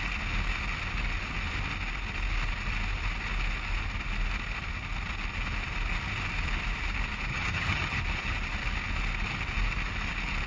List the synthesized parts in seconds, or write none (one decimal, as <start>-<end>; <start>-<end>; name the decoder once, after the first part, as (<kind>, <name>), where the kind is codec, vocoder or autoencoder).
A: 7.3-8.0 (vocoder, HiFi-GAN)